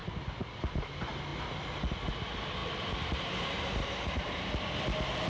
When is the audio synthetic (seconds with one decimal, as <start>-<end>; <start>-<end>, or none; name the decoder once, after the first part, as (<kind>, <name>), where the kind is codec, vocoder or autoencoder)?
0.0-0.9 (vocoder, BigVGAN v2); 2.6-4.4